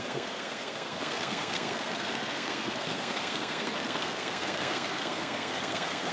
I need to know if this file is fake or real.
fake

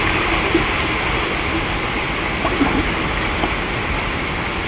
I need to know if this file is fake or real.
real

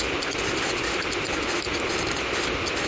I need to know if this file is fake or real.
real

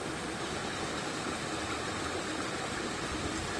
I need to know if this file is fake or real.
real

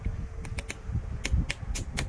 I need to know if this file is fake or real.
real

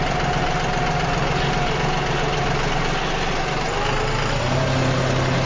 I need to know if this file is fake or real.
real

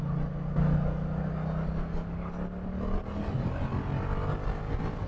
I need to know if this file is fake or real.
real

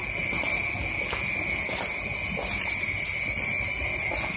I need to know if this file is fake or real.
real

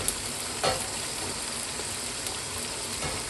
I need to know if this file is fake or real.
real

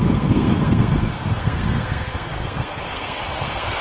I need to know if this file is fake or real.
fake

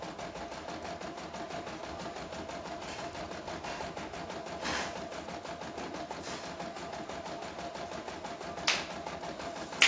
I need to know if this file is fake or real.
real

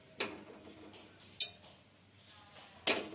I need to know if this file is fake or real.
real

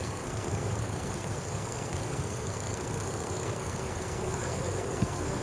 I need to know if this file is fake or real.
fake